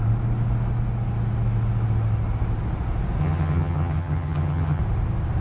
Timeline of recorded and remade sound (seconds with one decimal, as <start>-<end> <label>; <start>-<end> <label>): 0.0-3.2 recorded; 3.2-4.8 remade; 4.8-5.4 recorded